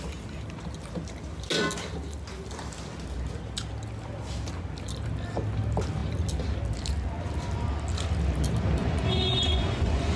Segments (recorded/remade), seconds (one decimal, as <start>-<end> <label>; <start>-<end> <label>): 0.0-8.8 recorded; 8.8-10.2 remade